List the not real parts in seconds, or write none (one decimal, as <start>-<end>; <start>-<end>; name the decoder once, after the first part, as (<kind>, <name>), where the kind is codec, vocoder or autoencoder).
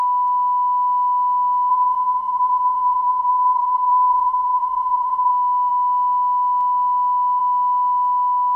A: 1.7-5.3 (vocoder, Vocos)